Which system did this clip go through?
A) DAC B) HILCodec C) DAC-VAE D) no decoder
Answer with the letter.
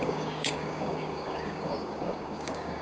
A